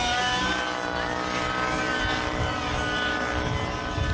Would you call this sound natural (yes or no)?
yes